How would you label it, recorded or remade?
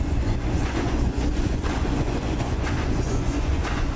remade